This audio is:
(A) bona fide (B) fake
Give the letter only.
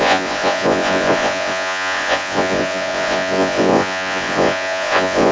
B